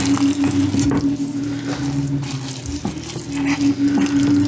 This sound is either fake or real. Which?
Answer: real